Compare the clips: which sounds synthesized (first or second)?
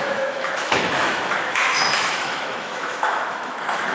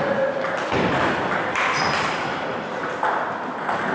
first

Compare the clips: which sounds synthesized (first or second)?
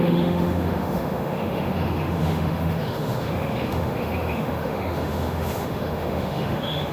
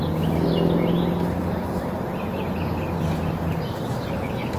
first